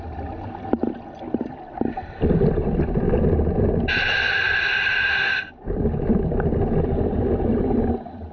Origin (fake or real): real